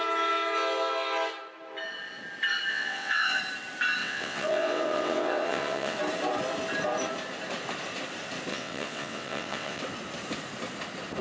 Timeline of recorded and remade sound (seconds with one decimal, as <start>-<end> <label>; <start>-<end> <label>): 0.0-2.7 recorded; 2.7-3.4 remade; 3.4-4.0 recorded; 4.0-6.0 remade; 6.0-8.5 recorded; 8.5-9.8 remade; 9.8-11.2 recorded